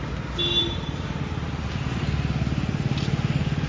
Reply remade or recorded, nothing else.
recorded